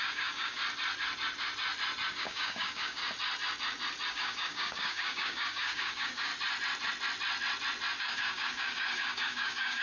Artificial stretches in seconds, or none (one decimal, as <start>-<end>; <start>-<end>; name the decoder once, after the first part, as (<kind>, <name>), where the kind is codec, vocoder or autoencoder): 0.0-0.6 (codec, DAC); 2.1-3.0; 4.1-6.3; 8.0-9.8